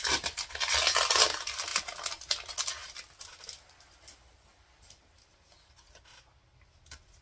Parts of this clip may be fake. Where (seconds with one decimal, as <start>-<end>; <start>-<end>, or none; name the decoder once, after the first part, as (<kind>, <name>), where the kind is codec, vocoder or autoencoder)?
none